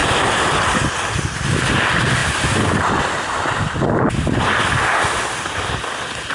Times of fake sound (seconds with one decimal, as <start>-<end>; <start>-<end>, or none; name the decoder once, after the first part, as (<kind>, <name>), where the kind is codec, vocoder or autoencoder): none